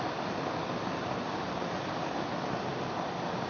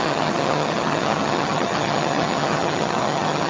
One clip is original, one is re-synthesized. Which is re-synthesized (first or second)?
second